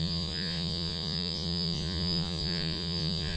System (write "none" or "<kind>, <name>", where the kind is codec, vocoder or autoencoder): vocoder, Vocos